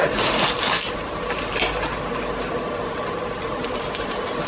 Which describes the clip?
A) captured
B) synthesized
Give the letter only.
A